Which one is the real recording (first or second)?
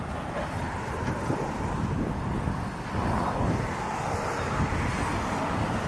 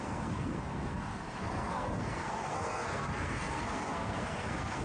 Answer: first